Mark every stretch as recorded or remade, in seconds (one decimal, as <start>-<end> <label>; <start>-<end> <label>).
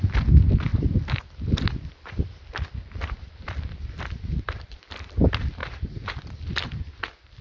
0.0-0.7 recorded; 0.7-5.1 remade; 5.1-7.4 recorded